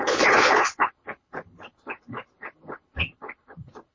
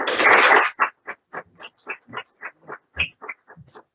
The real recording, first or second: second